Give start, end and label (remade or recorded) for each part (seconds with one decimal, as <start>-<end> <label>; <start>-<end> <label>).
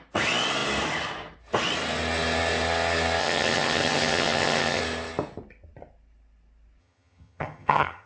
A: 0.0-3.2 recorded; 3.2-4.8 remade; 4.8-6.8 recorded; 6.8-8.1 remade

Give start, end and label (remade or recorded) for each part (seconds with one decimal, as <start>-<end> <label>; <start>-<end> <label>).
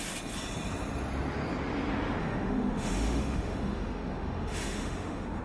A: 0.0-2.2 recorded; 2.2-5.4 remade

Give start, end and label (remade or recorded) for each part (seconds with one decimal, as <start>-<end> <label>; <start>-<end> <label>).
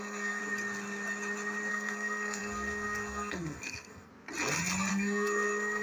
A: 0.0-0.4 remade; 0.4-1.7 recorded; 1.7-4.1 remade; 4.1-4.9 recorded; 4.9-5.8 remade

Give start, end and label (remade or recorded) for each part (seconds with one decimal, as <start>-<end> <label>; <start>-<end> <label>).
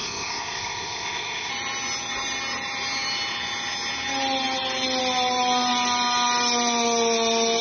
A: 0.0-1.5 remade; 1.5-7.6 recorded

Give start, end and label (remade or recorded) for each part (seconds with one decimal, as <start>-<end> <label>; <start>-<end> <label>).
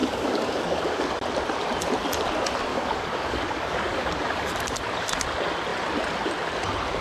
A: 0.0-1.0 remade; 1.0-2.7 recorded; 2.7-4.5 remade; 4.5-7.0 recorded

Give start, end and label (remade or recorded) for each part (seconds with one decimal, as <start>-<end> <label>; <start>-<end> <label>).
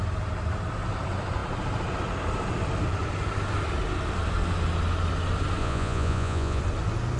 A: 0.0-5.6 recorded; 5.6-6.6 remade; 6.6-7.2 recorded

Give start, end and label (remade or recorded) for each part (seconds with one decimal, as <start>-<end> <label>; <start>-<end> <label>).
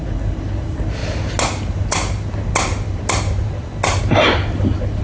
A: 0.0-5.0 recorded